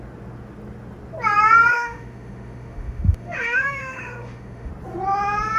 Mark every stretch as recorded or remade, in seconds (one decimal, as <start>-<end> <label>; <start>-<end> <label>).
0.0-1.7 recorded; 1.7-4.7 remade; 4.7-5.6 recorded